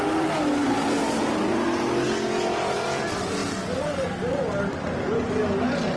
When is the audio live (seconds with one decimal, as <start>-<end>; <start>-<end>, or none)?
0.0-6.0